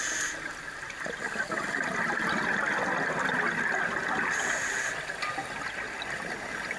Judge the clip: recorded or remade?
recorded